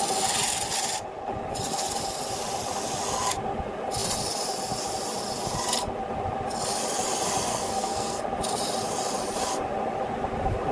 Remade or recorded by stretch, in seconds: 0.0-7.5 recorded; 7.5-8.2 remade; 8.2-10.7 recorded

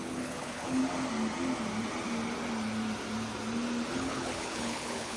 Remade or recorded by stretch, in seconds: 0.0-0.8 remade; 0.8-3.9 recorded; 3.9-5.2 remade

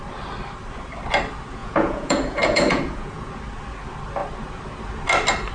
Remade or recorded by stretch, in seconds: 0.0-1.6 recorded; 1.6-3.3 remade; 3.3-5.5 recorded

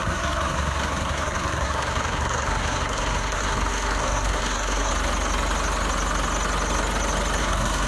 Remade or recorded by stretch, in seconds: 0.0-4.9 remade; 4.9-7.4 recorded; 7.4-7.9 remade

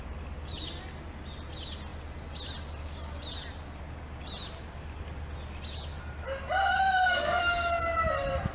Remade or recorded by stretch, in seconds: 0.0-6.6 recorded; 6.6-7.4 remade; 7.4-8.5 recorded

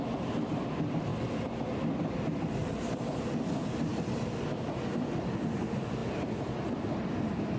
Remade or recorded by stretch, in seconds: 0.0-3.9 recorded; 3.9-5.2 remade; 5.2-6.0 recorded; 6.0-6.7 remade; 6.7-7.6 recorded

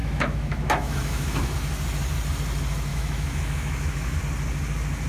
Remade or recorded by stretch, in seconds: 0.0-1.5 remade; 1.5-2.9 recorded; 2.9-4.2 remade; 4.2-5.1 recorded